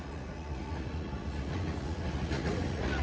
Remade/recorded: remade